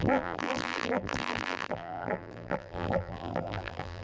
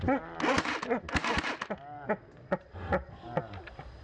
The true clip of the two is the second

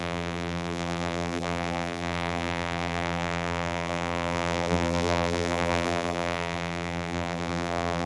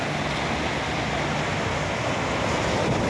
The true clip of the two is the second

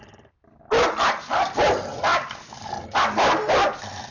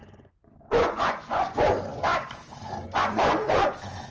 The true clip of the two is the first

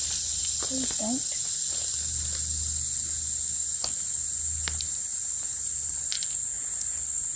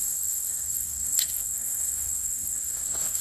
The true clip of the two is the first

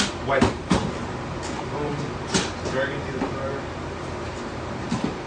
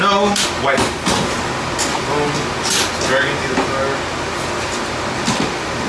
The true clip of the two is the second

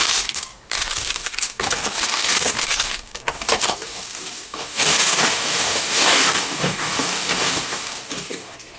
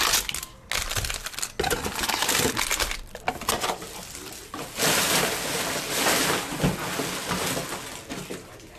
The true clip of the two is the second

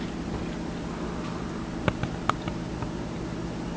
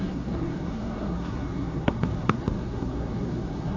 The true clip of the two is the first